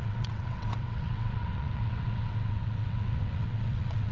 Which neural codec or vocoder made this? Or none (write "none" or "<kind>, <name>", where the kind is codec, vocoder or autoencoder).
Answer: vocoder, WaveNeXt